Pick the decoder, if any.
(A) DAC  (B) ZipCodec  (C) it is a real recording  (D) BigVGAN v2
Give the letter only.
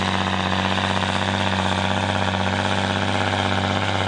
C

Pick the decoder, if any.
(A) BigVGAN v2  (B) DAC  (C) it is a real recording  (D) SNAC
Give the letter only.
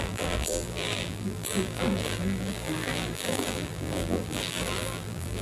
A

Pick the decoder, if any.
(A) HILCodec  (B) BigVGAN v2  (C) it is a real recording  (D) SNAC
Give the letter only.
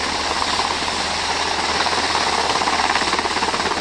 C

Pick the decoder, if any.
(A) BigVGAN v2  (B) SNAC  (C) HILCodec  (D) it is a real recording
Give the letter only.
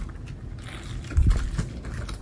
D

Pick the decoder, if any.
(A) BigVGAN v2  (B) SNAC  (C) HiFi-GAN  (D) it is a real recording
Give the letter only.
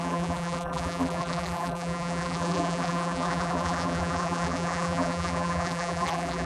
A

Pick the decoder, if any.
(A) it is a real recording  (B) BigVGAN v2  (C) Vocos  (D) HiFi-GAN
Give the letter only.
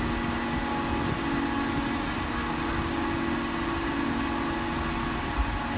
A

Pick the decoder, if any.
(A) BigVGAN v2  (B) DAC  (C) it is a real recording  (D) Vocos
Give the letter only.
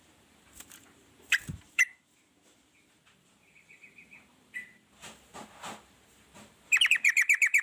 A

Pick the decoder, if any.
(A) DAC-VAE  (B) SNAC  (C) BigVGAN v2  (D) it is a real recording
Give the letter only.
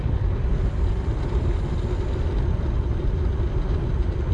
D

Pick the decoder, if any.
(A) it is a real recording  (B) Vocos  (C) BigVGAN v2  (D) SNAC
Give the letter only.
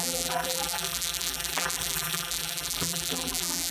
C